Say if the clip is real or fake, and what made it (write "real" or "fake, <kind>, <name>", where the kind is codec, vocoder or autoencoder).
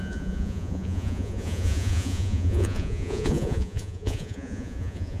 fake, vocoder, Vocos